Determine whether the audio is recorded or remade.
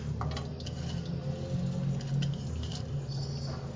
recorded